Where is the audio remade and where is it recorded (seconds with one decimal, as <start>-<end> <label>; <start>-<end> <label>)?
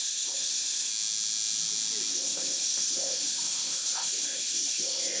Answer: 0.0-0.9 remade; 0.9-2.1 recorded; 2.1-5.2 remade